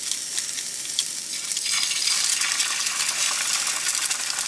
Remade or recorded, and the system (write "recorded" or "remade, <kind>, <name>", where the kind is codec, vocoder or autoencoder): recorded